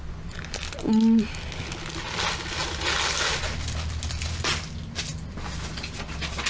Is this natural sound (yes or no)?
yes